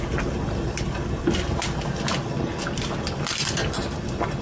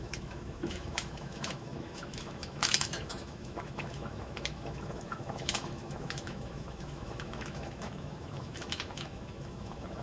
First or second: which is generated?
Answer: second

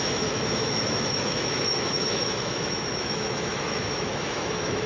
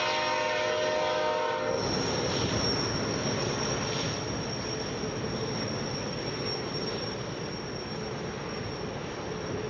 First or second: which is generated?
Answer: first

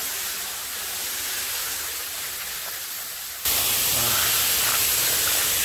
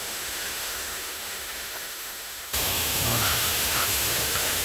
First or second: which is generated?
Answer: second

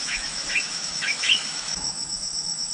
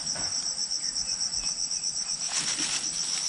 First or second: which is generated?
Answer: first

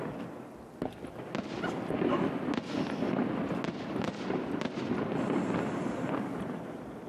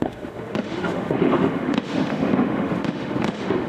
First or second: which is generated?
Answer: second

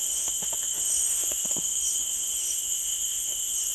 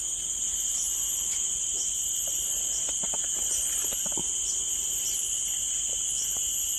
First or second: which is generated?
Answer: first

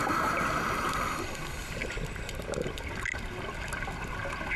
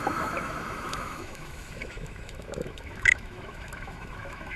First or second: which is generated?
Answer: second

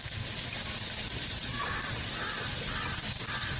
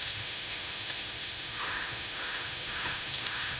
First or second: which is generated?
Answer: second